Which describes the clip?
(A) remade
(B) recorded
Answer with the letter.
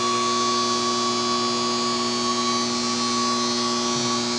B